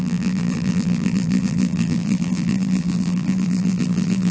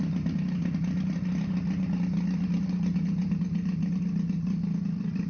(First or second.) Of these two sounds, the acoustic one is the second